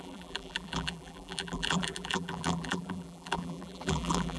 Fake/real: fake